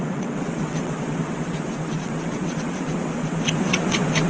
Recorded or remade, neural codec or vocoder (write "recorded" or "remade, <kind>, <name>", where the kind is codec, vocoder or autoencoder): remade, vocoder, WaveNeXt